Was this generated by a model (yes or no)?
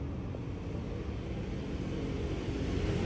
no